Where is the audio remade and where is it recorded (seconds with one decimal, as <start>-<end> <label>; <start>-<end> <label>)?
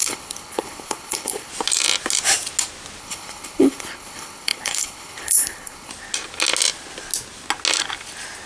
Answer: 0.0-1.5 remade; 1.5-3.0 recorded; 3.0-5.9 remade; 5.9-8.5 recorded